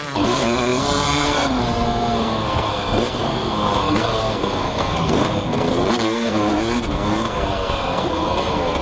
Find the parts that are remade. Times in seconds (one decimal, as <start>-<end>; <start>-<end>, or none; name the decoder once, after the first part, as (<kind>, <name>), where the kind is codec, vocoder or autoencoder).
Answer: 0.0-8.8 (codec, SNAC)